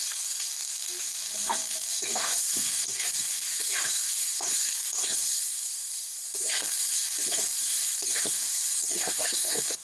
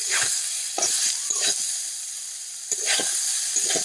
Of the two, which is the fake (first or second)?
first